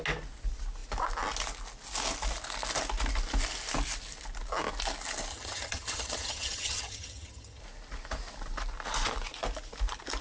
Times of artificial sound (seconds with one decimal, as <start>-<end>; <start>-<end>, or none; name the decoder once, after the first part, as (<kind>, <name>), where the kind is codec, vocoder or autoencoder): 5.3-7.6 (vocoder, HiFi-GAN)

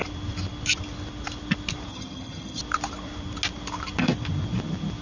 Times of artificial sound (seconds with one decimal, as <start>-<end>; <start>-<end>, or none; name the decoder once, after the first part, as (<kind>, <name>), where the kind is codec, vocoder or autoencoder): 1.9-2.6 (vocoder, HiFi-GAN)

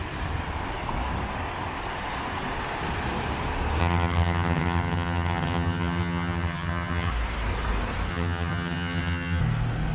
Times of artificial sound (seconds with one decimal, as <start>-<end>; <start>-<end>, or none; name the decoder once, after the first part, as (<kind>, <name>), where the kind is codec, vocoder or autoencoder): 3.8-7.1 (vocoder, HiFi-GAN); 8.1-9.4

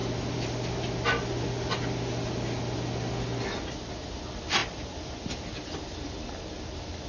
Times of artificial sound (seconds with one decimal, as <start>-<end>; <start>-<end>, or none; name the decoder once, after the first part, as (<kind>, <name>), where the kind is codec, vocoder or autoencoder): none

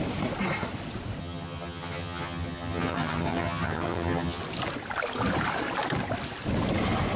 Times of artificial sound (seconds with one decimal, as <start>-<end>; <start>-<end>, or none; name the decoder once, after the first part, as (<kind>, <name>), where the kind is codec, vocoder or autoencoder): 1.2-4.4 (vocoder, HiFi-GAN)

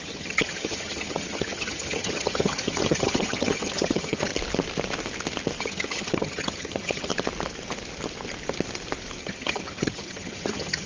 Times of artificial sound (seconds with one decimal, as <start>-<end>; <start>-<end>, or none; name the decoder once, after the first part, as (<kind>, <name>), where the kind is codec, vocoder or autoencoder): 0.0-4.3 (vocoder, HiFi-GAN); 5.6-7.1; 9.2-10.9

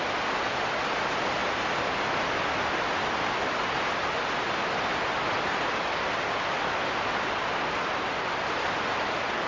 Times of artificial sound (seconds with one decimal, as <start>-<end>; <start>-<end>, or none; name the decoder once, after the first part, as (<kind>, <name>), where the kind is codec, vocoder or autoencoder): none

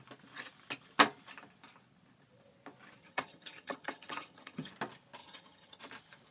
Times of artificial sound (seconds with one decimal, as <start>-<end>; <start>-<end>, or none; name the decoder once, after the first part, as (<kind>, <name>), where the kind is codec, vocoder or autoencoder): 3.0-4.7 (vocoder, HiFi-GAN); 5.2-5.8